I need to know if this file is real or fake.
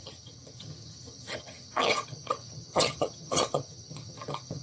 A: fake